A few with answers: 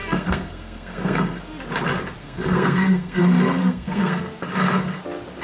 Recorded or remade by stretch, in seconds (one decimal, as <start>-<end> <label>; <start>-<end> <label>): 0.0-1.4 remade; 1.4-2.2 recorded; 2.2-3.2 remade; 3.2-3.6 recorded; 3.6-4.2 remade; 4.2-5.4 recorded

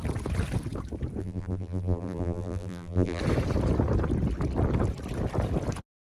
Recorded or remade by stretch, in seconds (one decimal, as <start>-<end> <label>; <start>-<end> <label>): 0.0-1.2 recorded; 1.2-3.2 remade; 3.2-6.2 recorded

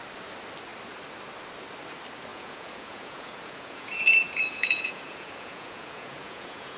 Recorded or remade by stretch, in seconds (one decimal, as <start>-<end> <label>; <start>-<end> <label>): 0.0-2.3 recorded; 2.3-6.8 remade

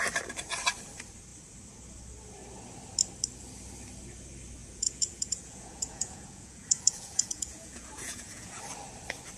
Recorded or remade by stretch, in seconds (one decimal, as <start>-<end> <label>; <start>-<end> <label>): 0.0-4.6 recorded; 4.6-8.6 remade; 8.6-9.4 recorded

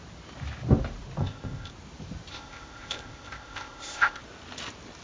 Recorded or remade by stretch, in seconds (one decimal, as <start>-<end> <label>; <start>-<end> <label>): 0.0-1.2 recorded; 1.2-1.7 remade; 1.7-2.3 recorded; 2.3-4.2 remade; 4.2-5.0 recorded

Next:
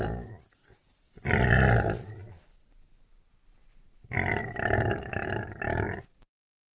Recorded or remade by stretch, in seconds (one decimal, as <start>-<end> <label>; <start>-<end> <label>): 0.0-6.8 recorded

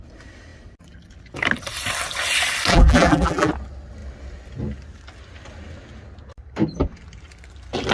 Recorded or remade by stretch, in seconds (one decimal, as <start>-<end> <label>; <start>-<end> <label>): 0.0-2.7 recorded; 2.7-3.5 remade; 3.5-7.9 recorded